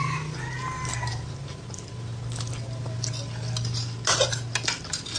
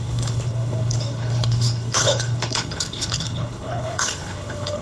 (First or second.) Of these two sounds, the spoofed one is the second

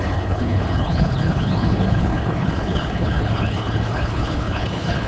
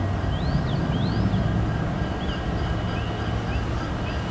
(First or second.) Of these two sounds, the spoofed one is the first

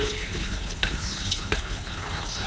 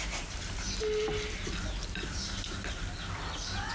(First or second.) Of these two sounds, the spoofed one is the first